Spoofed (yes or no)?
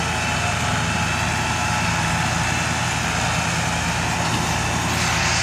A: no